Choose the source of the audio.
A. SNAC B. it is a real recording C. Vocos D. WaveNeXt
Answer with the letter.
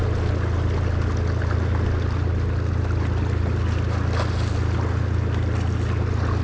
B